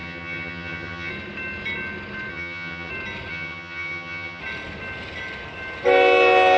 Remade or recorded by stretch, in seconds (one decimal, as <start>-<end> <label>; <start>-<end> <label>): 0.0-1.1 remade; 1.1-2.3 recorded; 2.3-2.9 remade; 2.9-3.3 recorded; 3.3-4.4 remade; 4.4-6.6 recorded